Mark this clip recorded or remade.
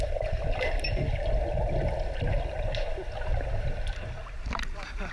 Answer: recorded